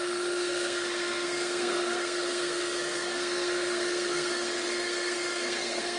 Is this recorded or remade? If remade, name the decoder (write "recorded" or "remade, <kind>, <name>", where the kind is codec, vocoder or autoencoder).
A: remade, codec, SNAC